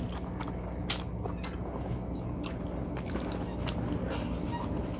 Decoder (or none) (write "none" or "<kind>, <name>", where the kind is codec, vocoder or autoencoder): none